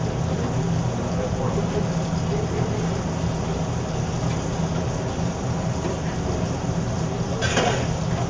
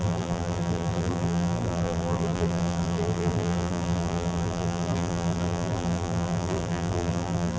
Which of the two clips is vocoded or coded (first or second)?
second